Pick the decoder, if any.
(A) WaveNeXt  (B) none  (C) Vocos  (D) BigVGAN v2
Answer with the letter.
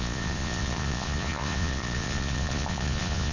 C